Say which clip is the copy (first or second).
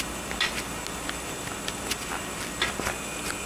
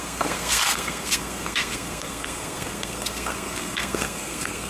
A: second